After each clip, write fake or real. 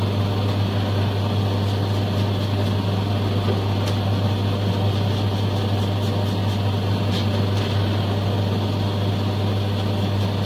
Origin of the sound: real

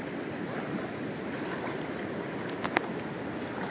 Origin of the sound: real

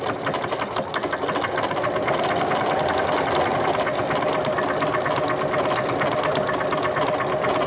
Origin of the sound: real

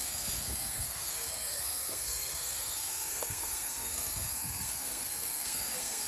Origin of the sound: fake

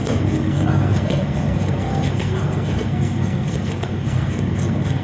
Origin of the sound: fake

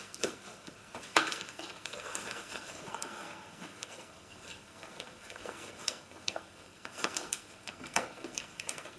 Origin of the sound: fake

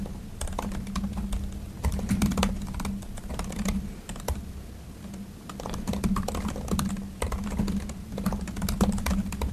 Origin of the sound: real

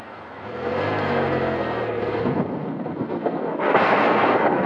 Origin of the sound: fake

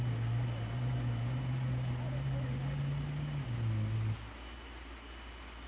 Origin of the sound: real